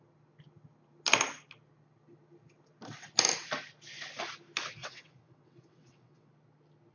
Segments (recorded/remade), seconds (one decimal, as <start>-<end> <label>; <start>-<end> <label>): 0.0-4.8 recorded; 4.8-6.3 remade; 6.3-6.9 recorded